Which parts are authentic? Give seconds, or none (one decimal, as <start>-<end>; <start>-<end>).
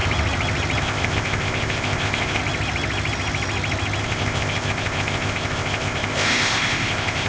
0.0-0.8; 2.4-4.0